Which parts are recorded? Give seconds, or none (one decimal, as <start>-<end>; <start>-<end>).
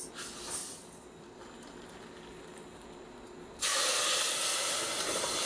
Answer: 0.0-0.6; 1.4-3.7; 4.3-5.5